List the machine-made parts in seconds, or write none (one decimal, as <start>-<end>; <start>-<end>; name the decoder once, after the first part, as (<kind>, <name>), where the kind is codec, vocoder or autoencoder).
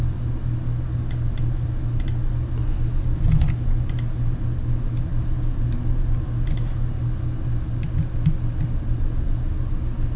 none